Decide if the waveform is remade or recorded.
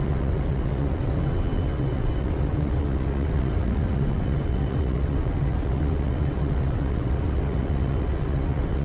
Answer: remade